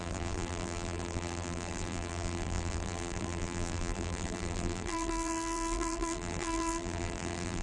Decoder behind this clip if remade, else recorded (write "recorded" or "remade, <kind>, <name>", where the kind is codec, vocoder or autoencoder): remade, vocoder, BigVGAN v2